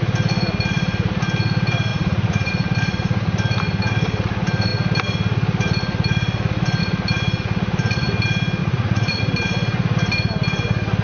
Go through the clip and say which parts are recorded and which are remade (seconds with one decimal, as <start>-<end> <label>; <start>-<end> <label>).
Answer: 0.0-1.9 recorded; 1.9-2.5 remade; 2.5-8.6 recorded; 8.6-9.2 remade; 9.2-11.0 recorded